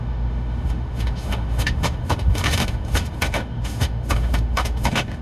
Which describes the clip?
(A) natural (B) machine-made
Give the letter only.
B